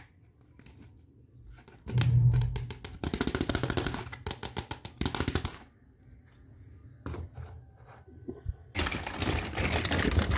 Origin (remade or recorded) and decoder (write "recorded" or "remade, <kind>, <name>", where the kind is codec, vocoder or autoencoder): recorded